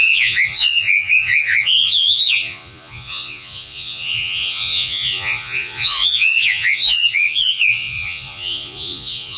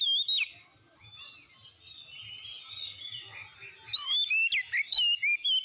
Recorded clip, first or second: second